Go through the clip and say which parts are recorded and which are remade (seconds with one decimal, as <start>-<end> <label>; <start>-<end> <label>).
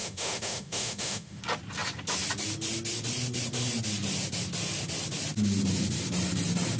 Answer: 0.0-1.4 remade; 1.4-6.8 recorded